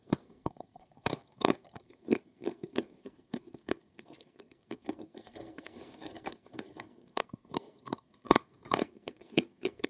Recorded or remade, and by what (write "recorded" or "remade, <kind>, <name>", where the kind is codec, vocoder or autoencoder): remade, codec, SNAC